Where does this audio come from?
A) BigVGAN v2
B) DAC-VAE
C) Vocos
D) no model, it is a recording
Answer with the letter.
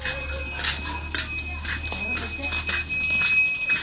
D